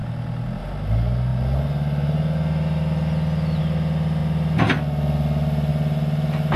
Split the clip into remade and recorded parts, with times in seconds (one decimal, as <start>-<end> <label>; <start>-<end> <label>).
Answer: 0.0-6.6 recorded